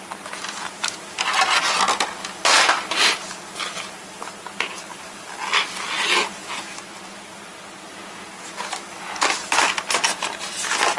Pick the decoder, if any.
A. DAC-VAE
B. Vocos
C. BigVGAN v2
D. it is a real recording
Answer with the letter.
D